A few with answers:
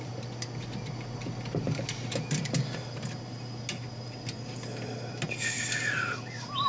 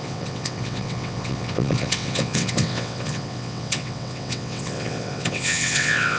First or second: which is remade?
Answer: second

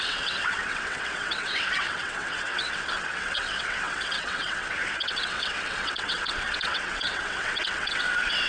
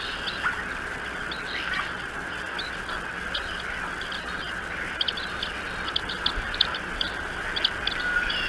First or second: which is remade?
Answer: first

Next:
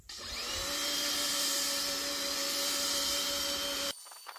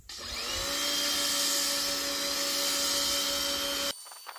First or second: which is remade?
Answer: first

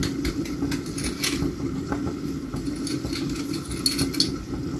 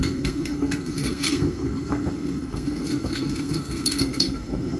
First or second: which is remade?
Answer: second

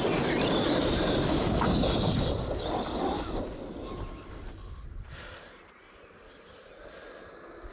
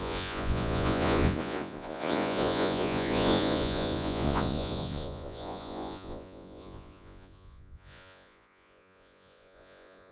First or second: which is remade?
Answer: second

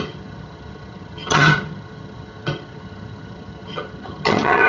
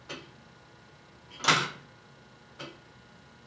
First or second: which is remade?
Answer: first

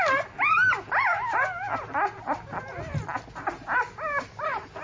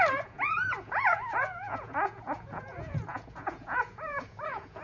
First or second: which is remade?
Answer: second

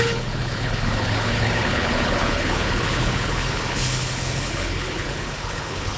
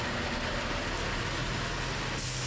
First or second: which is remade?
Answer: first